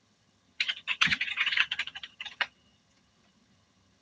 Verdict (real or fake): fake